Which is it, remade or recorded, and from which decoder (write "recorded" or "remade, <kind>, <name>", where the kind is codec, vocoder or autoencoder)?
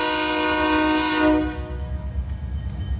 recorded